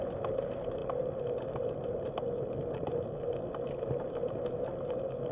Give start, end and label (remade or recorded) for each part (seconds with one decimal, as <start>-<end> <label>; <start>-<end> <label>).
0.0-5.3 recorded